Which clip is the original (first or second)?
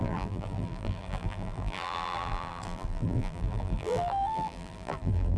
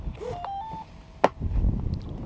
second